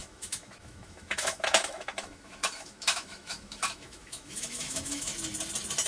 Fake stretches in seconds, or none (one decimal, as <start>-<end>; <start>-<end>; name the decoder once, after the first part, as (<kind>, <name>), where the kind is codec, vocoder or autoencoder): 0.0-5.1 (autoencoder, DAC-VAE)